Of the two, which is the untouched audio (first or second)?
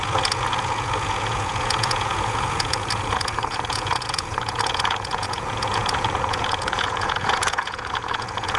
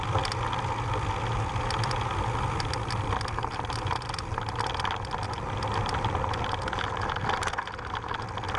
second